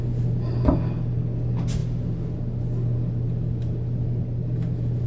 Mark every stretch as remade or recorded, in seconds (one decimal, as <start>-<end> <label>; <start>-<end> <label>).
0.0-5.1 recorded